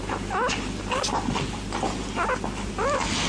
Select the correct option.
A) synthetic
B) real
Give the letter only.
B